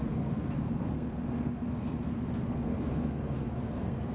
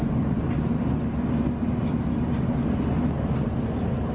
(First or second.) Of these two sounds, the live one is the second